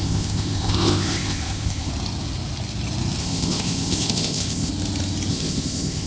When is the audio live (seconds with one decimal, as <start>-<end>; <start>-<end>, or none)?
1.9-3.2; 4.7-5.3